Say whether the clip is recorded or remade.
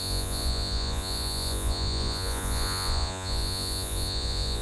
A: remade